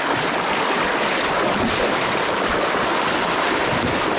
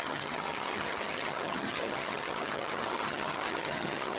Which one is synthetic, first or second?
second